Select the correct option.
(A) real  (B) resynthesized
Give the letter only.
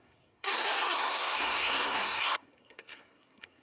B